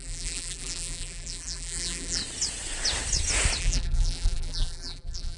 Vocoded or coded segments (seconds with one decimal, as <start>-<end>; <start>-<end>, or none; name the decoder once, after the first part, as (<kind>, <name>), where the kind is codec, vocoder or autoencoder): 0.0-2.2 (vocoder, BigVGAN v2); 3.6-5.4